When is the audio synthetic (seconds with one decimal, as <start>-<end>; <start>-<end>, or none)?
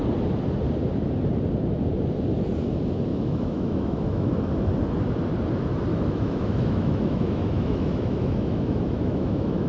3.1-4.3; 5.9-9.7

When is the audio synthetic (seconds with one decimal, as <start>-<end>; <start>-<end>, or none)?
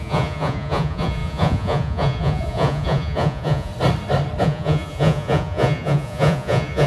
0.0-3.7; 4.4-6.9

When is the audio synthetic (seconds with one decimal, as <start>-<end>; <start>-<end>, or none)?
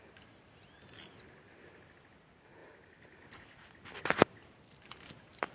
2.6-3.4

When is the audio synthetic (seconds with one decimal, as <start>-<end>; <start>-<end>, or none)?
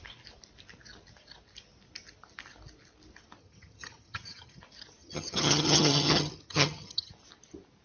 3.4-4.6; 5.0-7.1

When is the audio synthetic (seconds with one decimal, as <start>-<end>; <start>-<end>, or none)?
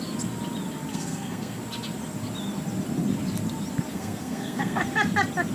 0.9-1.6; 3.9-4.8